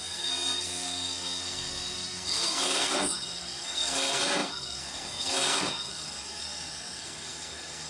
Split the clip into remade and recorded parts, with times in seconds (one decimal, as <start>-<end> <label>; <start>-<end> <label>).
0.0-7.9 remade